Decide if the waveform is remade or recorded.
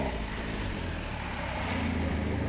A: recorded